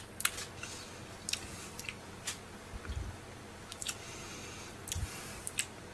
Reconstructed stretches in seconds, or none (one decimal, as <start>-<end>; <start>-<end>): none